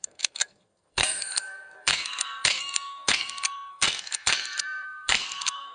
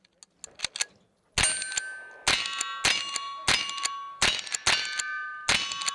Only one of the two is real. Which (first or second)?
second